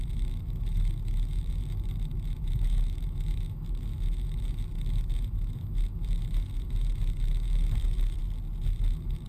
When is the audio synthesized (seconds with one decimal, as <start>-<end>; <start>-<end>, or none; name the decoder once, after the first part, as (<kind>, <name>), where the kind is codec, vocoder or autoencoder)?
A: 0.0-8.2 (autoencoder, DAC-VAE); 8.8-9.3